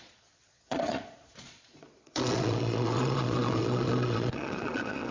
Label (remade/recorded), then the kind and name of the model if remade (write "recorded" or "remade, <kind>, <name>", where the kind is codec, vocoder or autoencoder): remade, vocoder, Vocos